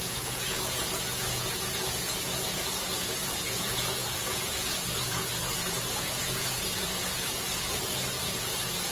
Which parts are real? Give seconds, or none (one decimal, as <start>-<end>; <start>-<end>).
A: none